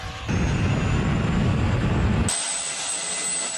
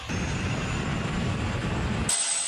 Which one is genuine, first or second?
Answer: first